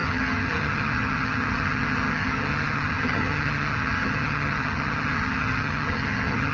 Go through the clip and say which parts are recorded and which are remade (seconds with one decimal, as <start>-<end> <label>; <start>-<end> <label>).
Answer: 0.0-6.5 remade